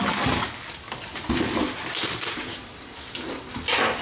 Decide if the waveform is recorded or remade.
recorded